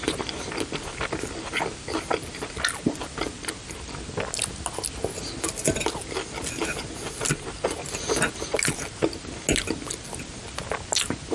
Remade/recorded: recorded